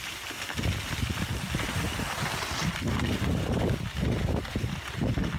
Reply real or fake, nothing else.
real